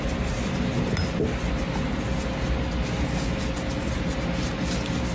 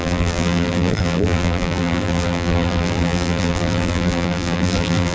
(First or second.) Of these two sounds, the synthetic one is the second